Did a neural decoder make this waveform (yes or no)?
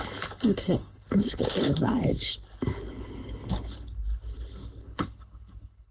yes